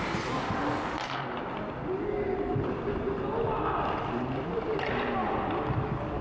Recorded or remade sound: recorded